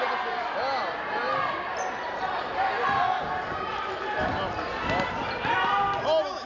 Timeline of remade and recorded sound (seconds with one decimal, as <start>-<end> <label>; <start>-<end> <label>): 0.0-6.5 recorded